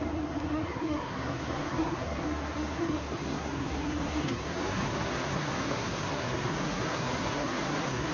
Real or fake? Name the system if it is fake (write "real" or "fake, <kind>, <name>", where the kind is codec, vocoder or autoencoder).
fake, codec, SNAC